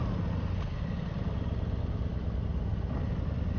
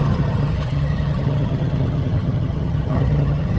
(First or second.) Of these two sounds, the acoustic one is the first